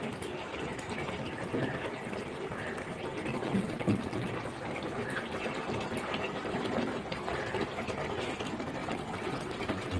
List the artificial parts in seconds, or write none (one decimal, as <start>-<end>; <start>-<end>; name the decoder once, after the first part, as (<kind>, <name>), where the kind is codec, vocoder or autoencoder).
3.3-4.3 (vocoder, WaveNeXt); 8.8-10.0